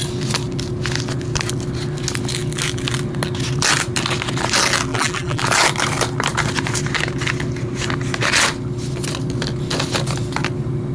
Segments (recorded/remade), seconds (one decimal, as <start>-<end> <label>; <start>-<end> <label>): 0.0-4.9 recorded; 4.9-5.4 remade; 5.4-10.9 recorded